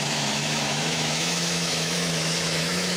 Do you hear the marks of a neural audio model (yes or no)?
yes